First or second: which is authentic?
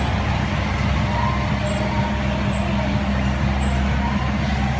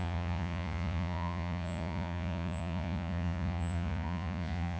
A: first